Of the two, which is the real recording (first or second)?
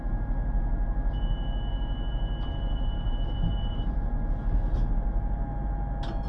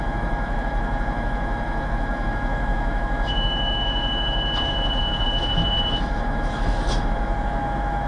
first